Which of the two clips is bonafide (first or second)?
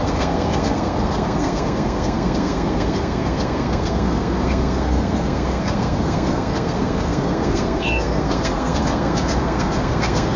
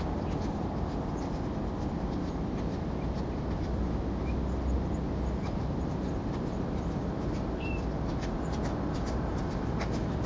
second